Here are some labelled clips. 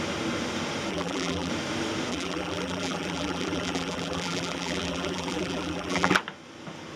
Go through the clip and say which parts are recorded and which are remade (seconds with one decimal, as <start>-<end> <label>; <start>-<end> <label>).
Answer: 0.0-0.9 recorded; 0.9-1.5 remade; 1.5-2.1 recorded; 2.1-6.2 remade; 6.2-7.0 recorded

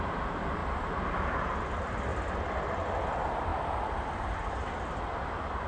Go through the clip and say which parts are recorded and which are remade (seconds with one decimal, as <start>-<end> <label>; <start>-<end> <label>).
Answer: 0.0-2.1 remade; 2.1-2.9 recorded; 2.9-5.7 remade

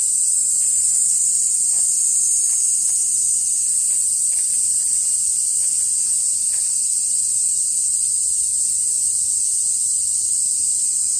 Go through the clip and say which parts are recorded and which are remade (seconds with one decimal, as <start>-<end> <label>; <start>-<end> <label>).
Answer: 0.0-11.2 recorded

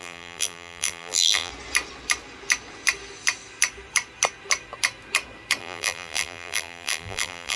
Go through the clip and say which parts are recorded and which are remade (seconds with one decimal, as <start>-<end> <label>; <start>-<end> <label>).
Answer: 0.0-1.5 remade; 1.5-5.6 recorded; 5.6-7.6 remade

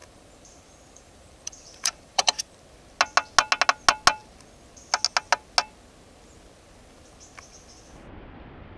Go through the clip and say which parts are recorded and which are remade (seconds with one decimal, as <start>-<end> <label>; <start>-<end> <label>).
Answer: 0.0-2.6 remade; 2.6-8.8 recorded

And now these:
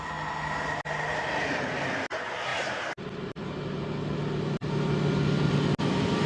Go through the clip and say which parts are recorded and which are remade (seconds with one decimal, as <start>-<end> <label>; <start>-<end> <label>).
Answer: 0.0-6.3 recorded

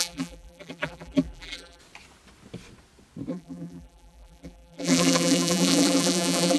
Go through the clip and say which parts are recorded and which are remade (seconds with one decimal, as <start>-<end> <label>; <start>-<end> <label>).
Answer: 0.0-1.8 remade; 1.8-3.3 recorded; 3.3-6.6 remade

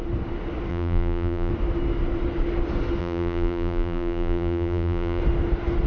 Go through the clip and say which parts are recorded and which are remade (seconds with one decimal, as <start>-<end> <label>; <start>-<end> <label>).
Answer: 0.0-0.7 recorded; 0.7-1.5 remade; 1.5-3.0 recorded; 3.0-5.2 remade; 5.2-5.9 recorded